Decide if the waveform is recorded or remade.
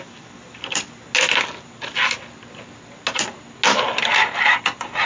recorded